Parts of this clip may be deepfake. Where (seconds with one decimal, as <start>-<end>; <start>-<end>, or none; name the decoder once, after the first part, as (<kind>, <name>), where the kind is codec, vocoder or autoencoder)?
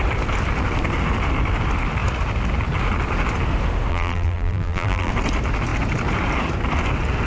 3.9-5.1 (vocoder, BigVGAN v2)